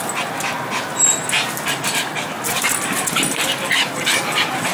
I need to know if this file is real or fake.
real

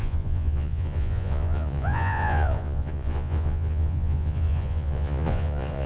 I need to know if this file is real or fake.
fake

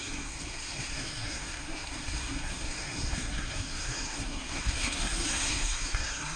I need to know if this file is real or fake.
fake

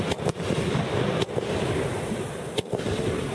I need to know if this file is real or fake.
real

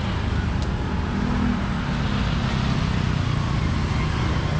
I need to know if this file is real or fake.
real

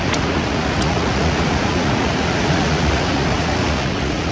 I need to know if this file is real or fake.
fake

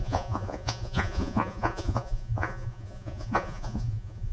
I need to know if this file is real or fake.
fake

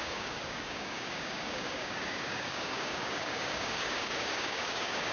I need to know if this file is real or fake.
fake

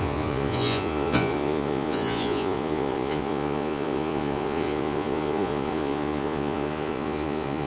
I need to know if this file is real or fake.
fake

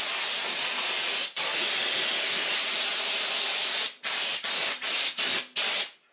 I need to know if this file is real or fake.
real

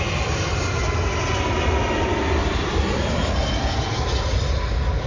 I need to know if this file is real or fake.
real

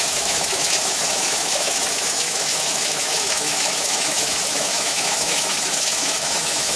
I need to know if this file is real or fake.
fake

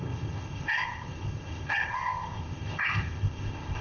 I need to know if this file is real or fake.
fake